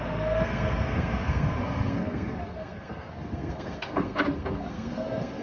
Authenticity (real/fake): fake